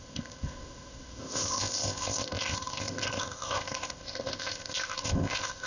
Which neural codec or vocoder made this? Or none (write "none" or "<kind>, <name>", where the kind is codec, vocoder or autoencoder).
codec, ZipCodec